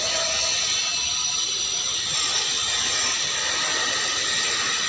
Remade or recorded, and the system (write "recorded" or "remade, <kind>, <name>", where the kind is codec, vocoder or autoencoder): recorded